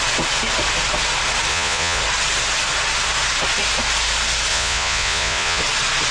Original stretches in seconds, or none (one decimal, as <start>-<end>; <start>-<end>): 0.0-1.5; 2.0-4.5; 5.6-6.1